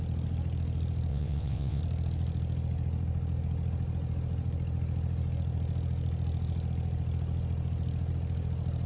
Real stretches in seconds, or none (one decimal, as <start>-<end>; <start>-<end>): 0.0-1.1; 1.8-8.9